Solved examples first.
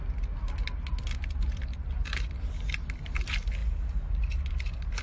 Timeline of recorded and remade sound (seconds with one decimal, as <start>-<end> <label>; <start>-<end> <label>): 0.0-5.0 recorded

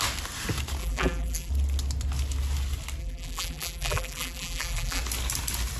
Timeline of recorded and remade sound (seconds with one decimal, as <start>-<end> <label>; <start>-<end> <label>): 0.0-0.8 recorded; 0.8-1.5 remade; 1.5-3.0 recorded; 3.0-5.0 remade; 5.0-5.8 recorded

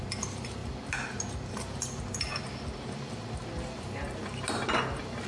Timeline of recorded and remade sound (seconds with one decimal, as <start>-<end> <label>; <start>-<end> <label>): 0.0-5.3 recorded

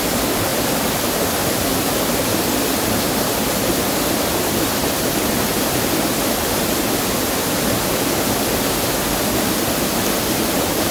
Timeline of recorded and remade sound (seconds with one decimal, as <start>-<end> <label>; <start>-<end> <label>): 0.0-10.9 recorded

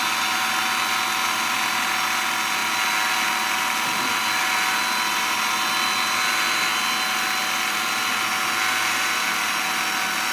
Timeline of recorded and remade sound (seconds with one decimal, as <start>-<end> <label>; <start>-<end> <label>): 0.0-10.3 recorded